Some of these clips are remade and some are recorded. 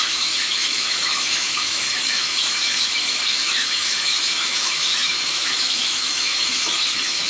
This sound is remade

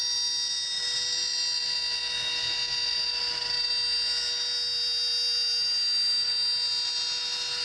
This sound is recorded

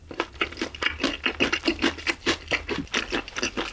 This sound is recorded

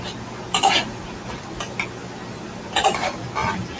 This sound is recorded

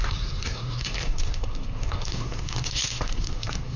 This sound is remade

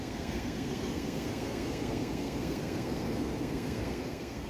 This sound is remade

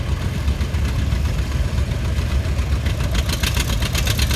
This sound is recorded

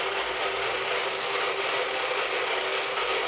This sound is recorded